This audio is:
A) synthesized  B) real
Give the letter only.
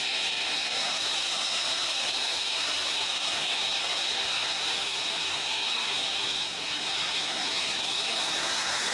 A